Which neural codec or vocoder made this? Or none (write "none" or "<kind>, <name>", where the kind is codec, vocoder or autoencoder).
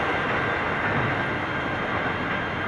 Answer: none